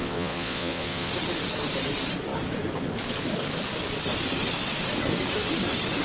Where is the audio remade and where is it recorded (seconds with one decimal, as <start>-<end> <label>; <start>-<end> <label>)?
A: 0.0-1.1 remade; 1.1-6.0 recorded